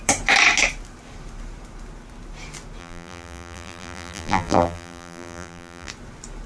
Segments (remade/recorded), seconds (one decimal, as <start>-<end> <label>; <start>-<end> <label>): 0.0-2.8 recorded; 2.8-5.9 remade; 5.9-6.5 recorded